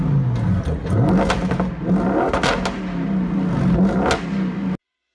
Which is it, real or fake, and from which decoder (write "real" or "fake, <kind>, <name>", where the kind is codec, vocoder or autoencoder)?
real